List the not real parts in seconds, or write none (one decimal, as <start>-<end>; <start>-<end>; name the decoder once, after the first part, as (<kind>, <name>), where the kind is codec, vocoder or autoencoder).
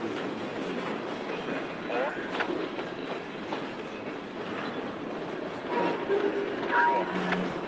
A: 0.5-1.0 (codec, DAC)